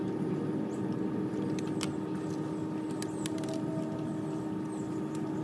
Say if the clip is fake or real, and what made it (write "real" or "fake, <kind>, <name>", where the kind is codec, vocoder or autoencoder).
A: real